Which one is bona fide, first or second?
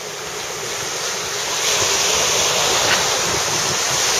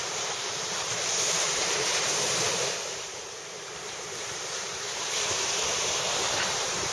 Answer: first